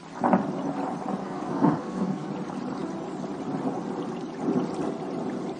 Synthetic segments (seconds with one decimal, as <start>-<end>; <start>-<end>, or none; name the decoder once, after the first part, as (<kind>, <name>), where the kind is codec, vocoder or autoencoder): 1.2-2.3 (codec, SNAC)